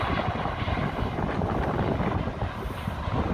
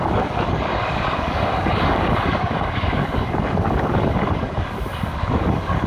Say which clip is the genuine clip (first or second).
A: first